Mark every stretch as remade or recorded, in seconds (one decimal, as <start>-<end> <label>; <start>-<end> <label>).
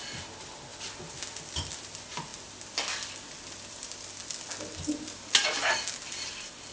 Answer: 0.0-0.7 recorded; 0.7-1.2 remade; 1.2-6.7 recorded